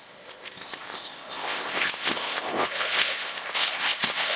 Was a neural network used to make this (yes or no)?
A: yes